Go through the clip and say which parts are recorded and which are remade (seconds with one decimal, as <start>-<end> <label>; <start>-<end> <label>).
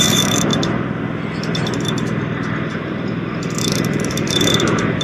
0.0-0.5 remade; 0.5-3.1 recorded; 3.1-5.0 remade